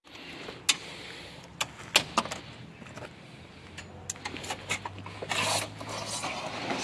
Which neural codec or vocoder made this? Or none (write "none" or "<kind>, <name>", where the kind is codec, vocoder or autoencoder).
none